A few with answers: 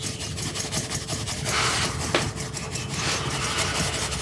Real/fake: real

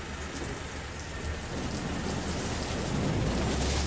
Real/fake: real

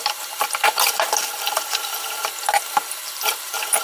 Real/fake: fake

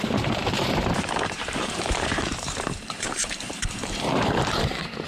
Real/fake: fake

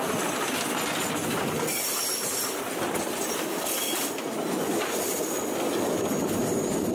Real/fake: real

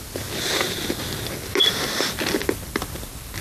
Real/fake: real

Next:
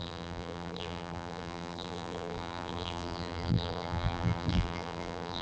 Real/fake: fake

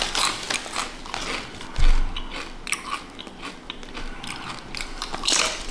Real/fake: real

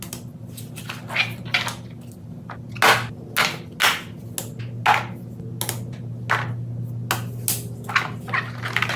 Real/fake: real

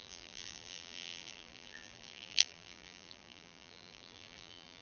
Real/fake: fake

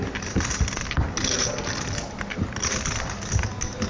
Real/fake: real